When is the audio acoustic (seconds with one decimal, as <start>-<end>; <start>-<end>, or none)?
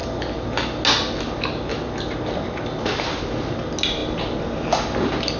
0.0-5.4